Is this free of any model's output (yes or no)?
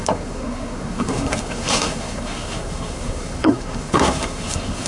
no